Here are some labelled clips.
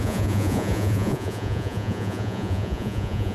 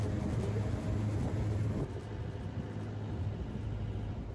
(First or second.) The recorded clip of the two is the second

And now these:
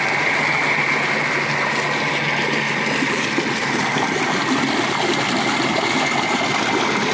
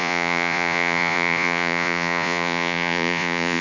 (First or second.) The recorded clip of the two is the first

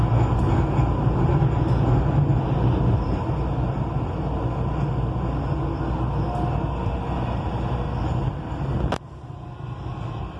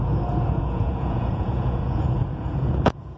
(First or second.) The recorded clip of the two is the first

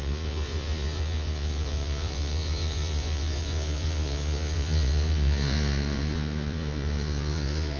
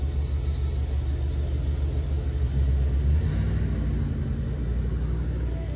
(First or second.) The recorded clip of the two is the second